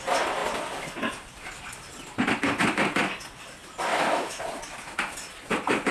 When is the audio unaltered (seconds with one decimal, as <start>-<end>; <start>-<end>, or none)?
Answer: 0.0-3.9; 4.4-5.9